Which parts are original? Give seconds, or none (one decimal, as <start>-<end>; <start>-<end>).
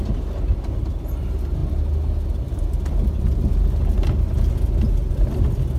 0.0-5.8